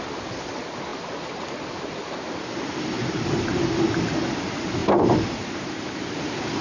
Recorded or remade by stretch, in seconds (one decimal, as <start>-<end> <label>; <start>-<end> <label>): 0.0-6.6 recorded